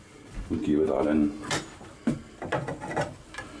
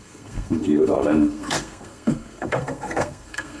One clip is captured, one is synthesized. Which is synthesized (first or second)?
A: second